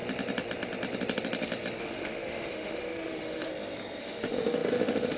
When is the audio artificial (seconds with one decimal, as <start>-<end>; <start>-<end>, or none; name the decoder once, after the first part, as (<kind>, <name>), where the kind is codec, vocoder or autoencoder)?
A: 1.8-3.5 (autoencoder, DAC-VAE); 4.0-5.2